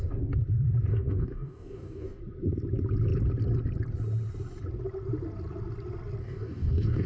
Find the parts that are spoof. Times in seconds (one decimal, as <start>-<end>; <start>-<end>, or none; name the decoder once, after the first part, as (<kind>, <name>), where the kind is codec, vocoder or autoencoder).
0.9-2.2 (codec, DAC); 6.2-7.1